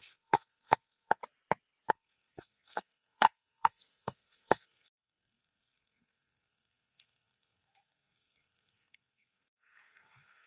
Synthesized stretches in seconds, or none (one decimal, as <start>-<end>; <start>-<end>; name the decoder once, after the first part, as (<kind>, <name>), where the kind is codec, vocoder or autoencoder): 0.0-1.2 (codec, SNAC); 1.9-10.5